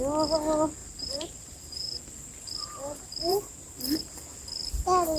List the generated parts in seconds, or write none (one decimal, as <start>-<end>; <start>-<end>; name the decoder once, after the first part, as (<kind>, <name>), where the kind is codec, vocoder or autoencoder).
0.8-2.0 (vocoder, BigVGAN v2); 3.2-3.8